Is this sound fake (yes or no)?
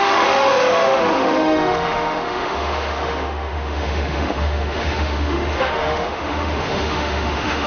yes